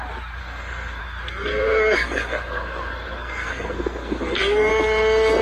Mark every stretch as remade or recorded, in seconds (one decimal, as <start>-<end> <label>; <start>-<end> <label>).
0.0-0.4 recorded; 0.4-1.0 remade; 1.0-1.5 recorded; 1.5-4.7 remade; 4.7-5.4 recorded